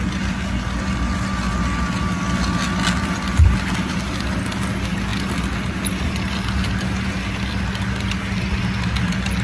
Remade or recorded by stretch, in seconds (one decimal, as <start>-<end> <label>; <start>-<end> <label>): 0.0-9.4 recorded